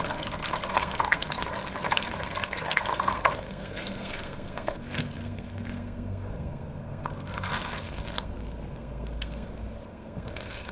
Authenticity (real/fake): fake